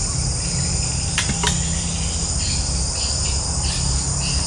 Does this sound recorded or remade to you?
recorded